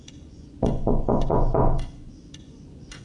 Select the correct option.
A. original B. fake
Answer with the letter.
B